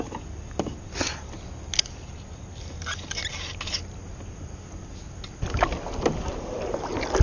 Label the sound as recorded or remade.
recorded